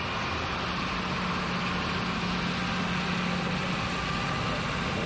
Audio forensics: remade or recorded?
recorded